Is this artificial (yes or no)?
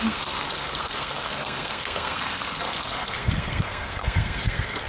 yes